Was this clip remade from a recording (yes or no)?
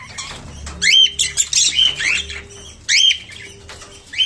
no